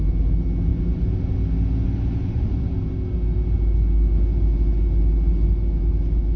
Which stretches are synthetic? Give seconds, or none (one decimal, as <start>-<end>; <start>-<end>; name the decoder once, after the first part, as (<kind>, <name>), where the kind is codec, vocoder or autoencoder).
none